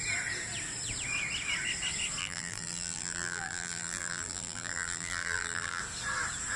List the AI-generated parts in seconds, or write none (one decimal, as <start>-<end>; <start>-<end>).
2.2-5.8